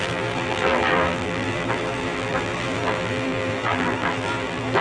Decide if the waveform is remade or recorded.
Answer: remade